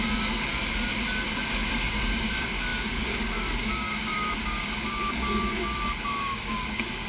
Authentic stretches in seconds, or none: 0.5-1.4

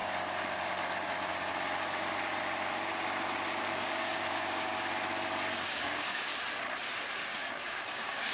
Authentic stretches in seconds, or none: 0.0-3.6; 4.7-5.6; 6.3-7.2

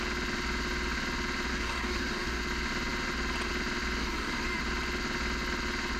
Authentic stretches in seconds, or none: 0.0-1.5; 2.4-4.0; 4.6-6.0

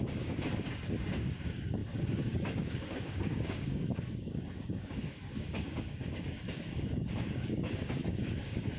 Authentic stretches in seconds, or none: none

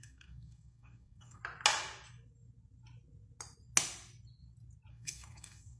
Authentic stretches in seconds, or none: 1.4-4.9

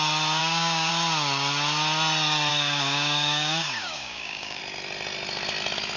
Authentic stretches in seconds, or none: 0.0-0.4; 0.9-2.5; 4.6-6.0

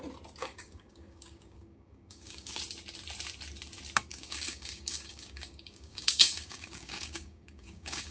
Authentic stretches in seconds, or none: 0.0-0.4; 2.6-4.1

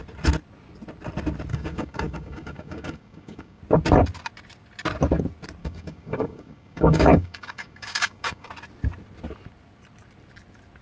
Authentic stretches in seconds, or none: 0.0-1.5; 3.6-5.6; 8.5-10.8